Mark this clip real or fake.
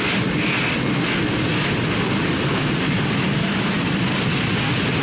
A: real